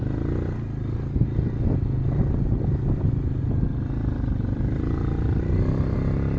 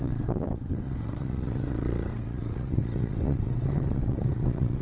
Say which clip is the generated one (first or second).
second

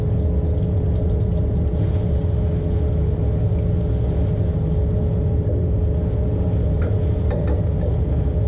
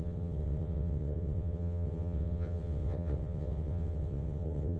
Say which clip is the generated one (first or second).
second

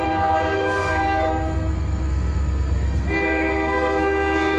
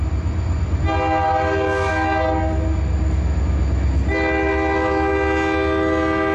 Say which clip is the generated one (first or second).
first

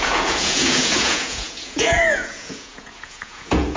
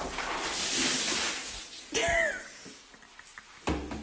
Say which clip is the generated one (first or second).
first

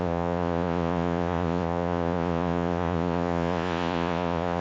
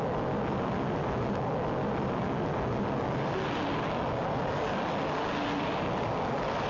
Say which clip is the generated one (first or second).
first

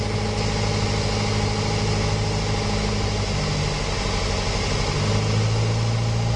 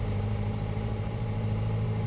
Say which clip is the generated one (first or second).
second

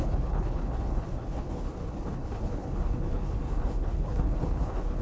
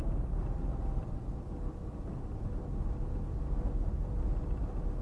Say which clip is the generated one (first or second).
first